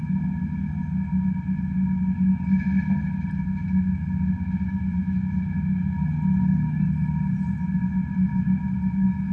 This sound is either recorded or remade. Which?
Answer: recorded